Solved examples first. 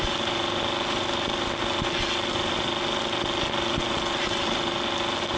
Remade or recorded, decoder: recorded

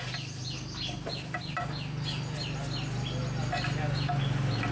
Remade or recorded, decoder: recorded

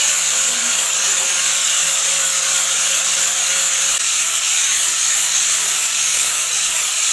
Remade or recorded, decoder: remade, codec, DAC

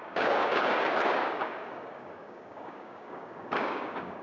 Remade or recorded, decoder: remade, codec, DAC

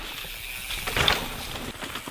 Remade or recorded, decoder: recorded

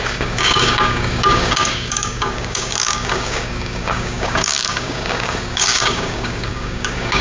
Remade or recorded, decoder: remade, codec, DAC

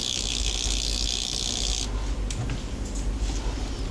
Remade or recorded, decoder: recorded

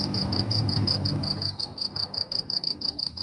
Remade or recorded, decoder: remade, codec, DAC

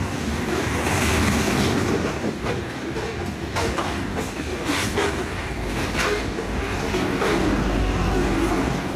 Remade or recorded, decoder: remade, codec, DAC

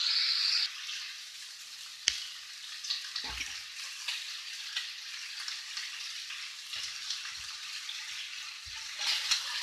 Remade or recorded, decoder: recorded